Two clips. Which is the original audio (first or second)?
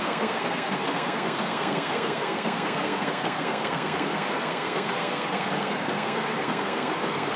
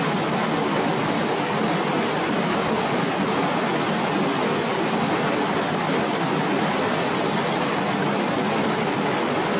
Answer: second